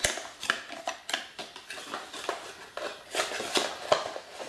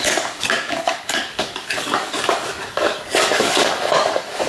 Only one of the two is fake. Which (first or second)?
second